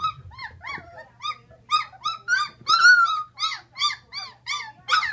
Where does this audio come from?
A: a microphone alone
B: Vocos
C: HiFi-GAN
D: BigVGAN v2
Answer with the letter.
A